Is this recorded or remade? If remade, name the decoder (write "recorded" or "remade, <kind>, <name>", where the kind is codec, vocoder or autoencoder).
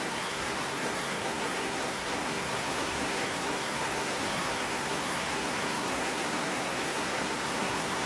remade, codec, SNAC